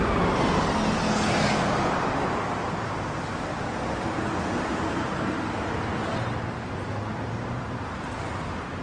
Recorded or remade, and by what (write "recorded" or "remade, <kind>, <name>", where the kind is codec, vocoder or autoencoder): recorded